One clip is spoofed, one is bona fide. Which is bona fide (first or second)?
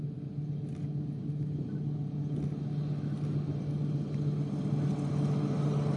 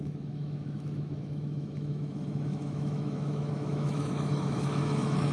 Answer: first